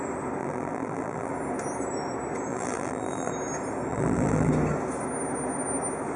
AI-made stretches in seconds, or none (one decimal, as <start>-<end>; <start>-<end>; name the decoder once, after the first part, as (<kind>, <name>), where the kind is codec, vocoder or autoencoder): 0.4-1.3 (vocoder, BigVGAN v2); 2.5-3.3; 3.9-4.5